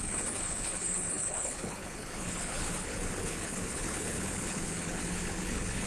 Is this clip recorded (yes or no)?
no